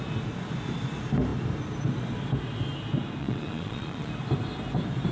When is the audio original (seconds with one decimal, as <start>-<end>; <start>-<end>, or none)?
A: 0.0-3.2; 4.1-5.1